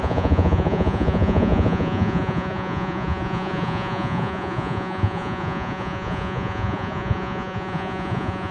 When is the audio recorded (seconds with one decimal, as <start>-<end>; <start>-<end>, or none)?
none